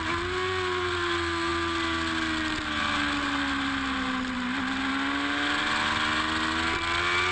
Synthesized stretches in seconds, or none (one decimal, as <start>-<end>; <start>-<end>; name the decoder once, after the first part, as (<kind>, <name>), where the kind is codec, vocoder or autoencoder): none